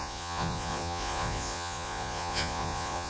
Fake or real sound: fake